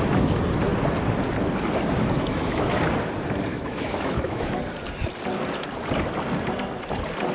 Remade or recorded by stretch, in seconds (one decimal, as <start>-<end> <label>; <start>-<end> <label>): 0.0-2.1 recorded; 2.1-2.8 remade; 2.8-3.5 recorded; 3.5-4.6 remade; 4.6-7.3 recorded